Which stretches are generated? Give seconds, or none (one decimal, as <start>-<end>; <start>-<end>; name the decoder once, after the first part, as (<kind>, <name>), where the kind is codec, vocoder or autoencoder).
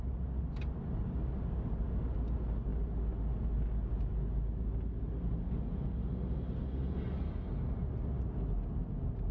none